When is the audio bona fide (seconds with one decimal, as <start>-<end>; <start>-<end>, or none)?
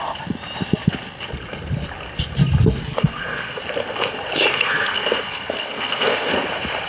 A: 0.0-2.8; 3.6-4.5; 6.3-6.9